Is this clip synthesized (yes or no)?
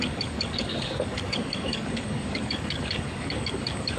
yes